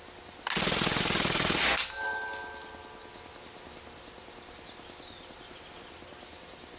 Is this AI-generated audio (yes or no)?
no